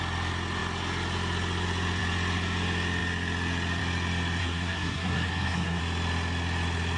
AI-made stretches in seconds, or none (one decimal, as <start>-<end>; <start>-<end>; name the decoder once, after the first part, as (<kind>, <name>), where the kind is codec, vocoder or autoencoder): 4.4-5.8 (codec, SNAC)